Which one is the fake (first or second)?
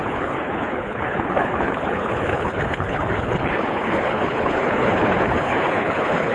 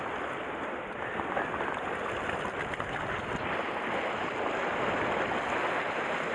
first